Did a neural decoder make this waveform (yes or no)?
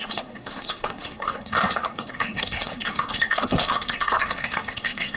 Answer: yes